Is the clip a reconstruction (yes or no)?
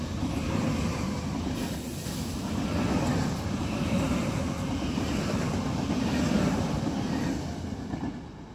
no